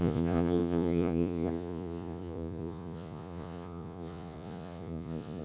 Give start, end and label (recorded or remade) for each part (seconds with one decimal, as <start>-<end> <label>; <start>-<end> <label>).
0.0-5.4 remade